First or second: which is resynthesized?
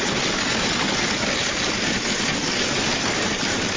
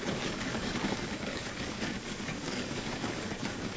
second